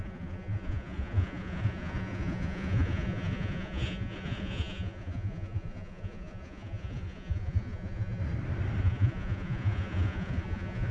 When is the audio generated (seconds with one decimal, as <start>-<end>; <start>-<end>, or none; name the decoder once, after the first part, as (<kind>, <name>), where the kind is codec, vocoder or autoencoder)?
0.0-8.2 (vocoder, Vocos); 8.8-10.9